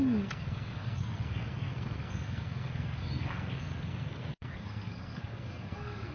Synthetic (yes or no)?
yes